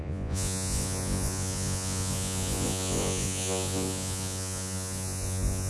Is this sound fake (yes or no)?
yes